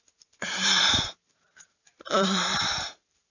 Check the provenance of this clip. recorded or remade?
remade